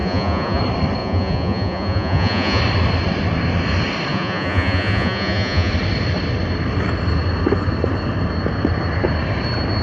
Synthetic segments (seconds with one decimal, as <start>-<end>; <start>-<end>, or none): 0.0-0.6; 1.0-2.6; 4.1-5.7